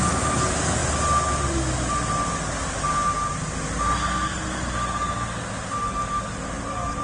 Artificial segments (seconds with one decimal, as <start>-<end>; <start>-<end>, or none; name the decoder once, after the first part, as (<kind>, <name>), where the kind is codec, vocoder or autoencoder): none